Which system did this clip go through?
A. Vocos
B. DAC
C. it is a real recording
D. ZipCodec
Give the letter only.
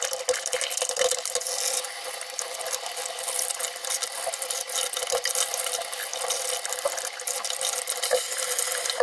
C